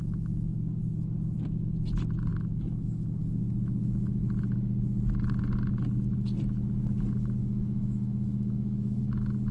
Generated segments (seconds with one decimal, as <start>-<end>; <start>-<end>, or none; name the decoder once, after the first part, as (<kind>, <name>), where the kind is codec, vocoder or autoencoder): 2.3-3.2 (autoencoder, DAC-VAE); 7.4-9.0